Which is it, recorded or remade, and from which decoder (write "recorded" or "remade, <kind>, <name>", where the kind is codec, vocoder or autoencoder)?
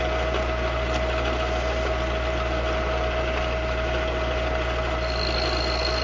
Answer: recorded